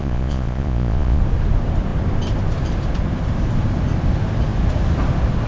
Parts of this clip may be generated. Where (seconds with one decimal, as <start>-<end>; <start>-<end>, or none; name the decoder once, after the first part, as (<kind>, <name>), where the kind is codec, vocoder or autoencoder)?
0.0-1.2 (vocoder, Vocos)

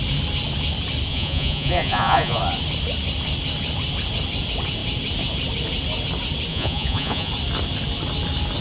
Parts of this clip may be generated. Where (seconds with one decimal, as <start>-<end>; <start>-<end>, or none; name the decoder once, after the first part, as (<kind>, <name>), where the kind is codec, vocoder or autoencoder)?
1.1-2.4 (vocoder, Vocos); 6.5-7.3

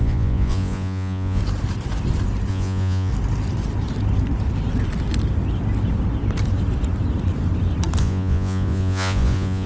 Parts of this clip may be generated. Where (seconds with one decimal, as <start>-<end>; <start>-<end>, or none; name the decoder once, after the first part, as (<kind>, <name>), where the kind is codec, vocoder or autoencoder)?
0.0-1.4 (vocoder, Vocos); 2.5-3.1; 8.0-9.7

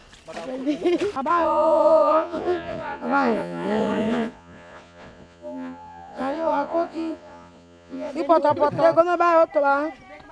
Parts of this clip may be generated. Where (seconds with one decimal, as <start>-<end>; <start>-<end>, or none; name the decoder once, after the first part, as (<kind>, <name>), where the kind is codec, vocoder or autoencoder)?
1.3-8.1 (vocoder, Vocos)

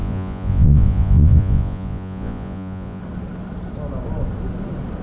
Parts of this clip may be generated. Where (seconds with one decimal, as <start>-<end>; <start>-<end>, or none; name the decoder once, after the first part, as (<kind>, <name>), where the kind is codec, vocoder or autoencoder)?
0.0-3.0 (vocoder, Vocos)

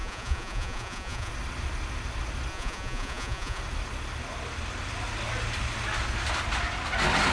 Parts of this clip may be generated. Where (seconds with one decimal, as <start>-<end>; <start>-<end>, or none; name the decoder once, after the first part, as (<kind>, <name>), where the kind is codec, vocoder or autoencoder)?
0.0-1.3 (vocoder, Vocos); 2.5-3.6

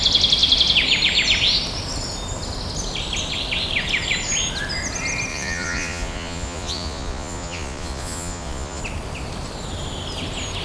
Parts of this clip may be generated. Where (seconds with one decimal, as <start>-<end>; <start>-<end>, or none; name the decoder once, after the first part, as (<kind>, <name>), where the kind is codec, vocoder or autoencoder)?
5.3-8.8 (vocoder, Vocos)

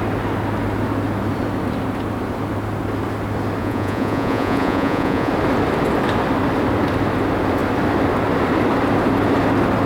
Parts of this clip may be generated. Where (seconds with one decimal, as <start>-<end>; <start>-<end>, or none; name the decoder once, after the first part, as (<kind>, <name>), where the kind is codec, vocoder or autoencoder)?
3.6-5.3 (vocoder, Vocos)